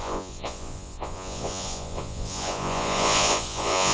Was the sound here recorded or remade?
remade